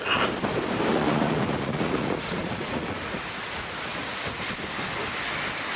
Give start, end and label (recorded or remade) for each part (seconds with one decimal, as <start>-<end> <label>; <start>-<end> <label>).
0.0-0.9 recorded; 0.9-4.4 remade; 4.4-5.8 recorded